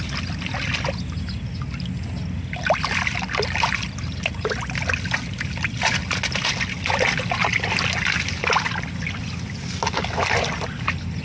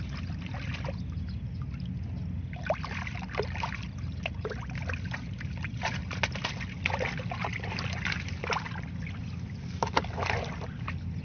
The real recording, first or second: first